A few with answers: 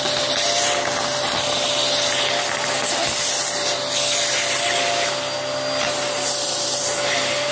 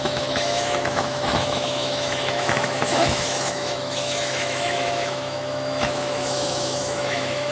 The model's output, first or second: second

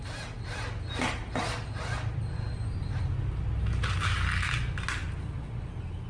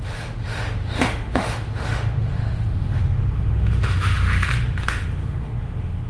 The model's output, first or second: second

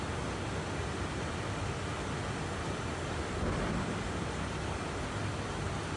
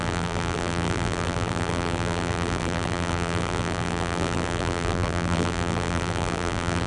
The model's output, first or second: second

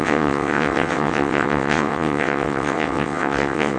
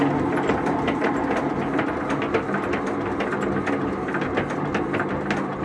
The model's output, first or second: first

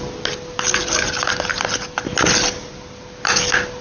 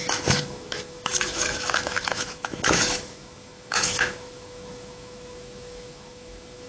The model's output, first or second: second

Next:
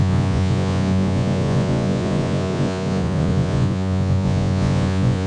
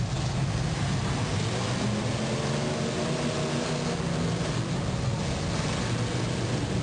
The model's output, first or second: first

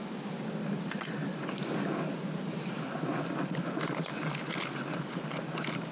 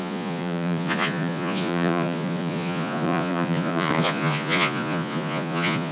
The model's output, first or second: second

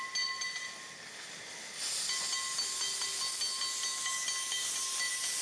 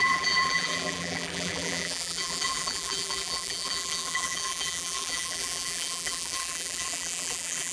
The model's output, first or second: second